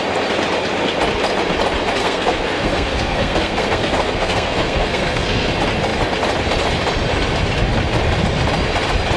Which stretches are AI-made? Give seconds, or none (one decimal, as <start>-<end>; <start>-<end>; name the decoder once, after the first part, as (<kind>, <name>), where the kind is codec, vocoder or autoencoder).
2.0-5.5 (codec, SNAC)

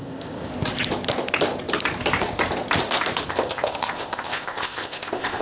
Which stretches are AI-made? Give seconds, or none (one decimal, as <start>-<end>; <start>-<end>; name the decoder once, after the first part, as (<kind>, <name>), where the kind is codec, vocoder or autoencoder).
0.0-0.5 (codec, ZipCodec); 3.3-5.4

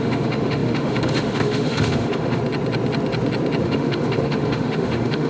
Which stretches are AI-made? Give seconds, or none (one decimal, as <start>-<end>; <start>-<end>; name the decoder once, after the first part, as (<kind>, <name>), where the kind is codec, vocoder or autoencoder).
0.0-2.4 (autoencoder, DAC-VAE); 3.6-5.3

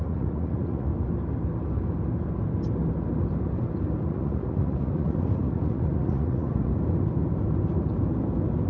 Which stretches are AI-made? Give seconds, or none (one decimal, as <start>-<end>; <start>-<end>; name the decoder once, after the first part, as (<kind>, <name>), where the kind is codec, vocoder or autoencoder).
0.0-0.9 (vocoder, Vocos); 4.1-6.7

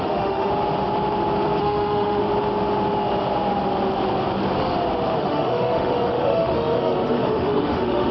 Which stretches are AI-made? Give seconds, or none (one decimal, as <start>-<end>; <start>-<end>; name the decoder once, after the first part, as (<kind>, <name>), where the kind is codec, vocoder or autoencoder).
0.0-0.5 (autoencoder, DAC-VAE); 1.6-2.2; 5.2-8.1

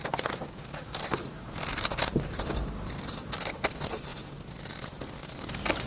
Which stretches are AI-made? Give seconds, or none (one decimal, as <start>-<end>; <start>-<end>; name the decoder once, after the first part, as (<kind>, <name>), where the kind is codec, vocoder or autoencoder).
none